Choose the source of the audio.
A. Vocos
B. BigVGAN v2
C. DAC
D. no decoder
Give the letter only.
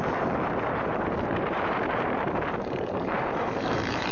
B